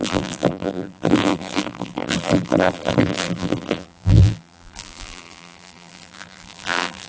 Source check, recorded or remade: remade